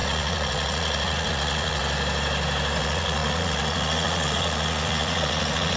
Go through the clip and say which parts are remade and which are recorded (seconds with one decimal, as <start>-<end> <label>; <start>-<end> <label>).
0.0-1.8 remade; 1.8-2.8 recorded; 2.8-5.8 remade